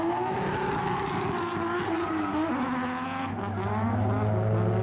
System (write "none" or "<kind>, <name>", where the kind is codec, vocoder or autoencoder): none